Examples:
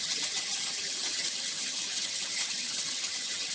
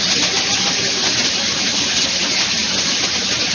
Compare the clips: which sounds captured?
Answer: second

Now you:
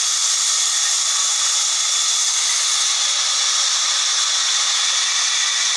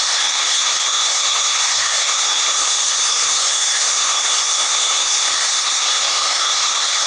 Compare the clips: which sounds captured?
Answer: first